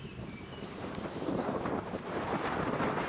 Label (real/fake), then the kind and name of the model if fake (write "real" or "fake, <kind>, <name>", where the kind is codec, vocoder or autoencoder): fake, vocoder, BigVGAN v2